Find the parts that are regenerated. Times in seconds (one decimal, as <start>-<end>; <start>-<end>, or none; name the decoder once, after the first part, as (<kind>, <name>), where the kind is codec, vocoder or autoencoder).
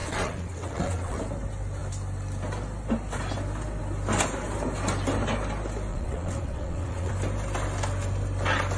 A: 0.0-1.2 (vocoder, WaveNeXt); 5.9-7.1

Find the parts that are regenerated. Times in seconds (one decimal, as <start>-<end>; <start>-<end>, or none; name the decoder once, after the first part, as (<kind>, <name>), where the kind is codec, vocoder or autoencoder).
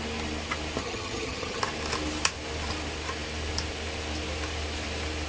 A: 0.8-1.6 (vocoder, HiFi-GAN)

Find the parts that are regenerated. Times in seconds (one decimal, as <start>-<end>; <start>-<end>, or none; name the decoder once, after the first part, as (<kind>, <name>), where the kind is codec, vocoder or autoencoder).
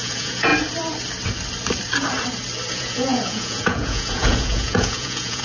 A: 0.0-0.5 (vocoder, Vocos); 2.7-5.4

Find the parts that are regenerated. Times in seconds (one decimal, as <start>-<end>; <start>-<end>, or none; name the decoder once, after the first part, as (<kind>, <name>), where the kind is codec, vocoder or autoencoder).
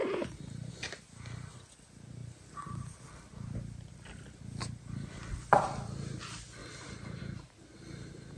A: none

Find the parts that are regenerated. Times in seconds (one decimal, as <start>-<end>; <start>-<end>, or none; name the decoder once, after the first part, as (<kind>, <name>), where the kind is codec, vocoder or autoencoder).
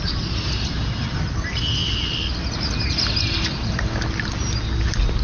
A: none